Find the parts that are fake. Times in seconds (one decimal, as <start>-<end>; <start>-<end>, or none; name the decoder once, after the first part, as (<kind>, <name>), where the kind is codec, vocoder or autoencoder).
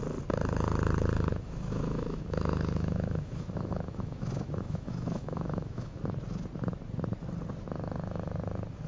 1.3-6.0 (autoencoder, DAC-VAE)